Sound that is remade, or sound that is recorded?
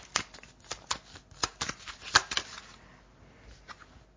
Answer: recorded